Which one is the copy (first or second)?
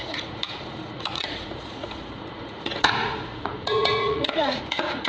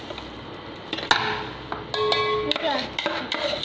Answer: first